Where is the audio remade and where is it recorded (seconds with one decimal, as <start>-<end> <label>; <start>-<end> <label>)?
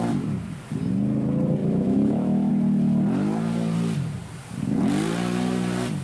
0.0-1.6 recorded; 1.6-2.5 remade; 2.5-6.0 recorded